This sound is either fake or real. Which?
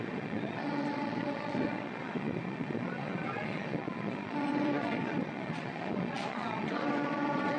fake